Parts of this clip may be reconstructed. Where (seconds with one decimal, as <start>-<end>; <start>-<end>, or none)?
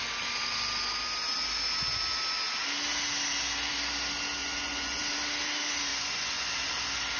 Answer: 4.4-5.0; 5.9-6.5